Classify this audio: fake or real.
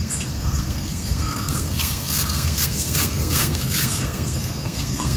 fake